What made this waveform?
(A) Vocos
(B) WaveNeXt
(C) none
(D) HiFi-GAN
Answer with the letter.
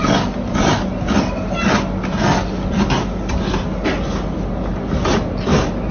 C